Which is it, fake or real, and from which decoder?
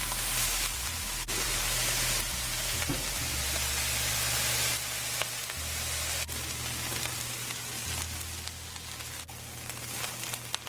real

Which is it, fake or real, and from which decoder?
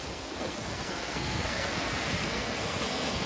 fake, codec, SNAC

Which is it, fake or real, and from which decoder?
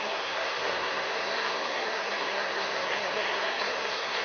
fake, codec, SNAC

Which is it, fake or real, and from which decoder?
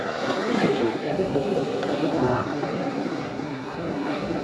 fake, codec, SNAC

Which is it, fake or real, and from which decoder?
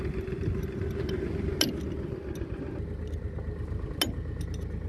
real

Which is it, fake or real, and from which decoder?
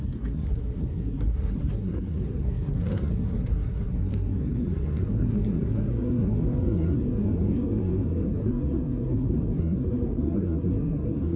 fake, codec, SNAC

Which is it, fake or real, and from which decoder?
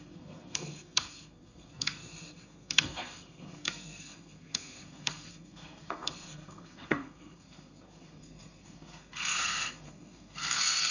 fake, codec, SNAC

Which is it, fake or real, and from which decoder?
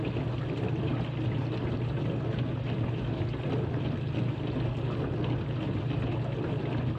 real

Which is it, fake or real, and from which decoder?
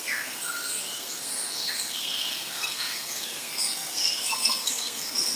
fake, codec, SNAC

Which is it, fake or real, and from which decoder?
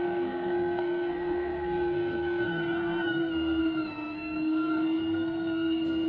fake, codec, SNAC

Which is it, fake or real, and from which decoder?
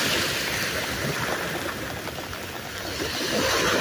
real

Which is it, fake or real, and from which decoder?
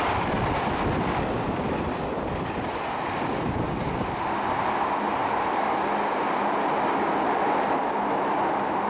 real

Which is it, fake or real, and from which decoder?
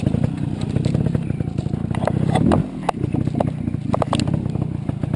real